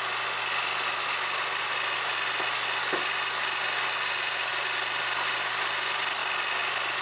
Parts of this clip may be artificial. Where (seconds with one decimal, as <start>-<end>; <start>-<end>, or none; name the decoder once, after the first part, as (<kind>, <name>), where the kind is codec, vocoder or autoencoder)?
none